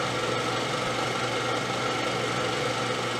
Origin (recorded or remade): recorded